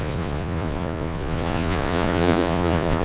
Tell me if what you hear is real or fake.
fake